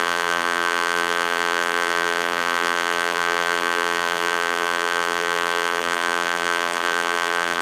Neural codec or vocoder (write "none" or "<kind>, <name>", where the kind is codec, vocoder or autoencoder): vocoder, BigVGAN v2